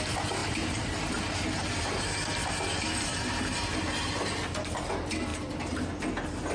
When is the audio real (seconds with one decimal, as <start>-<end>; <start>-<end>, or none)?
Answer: 0.0-0.4; 1.1-3.1; 3.7-6.5